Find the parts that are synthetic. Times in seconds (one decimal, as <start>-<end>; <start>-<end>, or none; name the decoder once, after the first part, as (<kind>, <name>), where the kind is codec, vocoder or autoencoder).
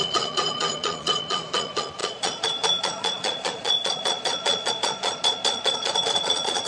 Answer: 0.0-6.7 (vocoder, Vocos)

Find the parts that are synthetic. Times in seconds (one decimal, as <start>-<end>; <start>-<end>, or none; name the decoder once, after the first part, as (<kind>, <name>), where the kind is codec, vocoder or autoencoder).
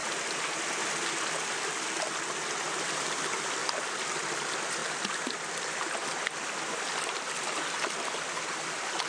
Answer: 2.6-3.6 (vocoder, BigVGAN v2); 4.2-4.8; 6.0-9.1